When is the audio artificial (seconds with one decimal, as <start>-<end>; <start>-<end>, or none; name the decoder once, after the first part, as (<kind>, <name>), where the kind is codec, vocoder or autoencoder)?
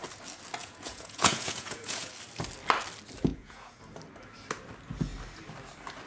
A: 0.6-2.1 (vocoder, Vocos); 3.3-3.8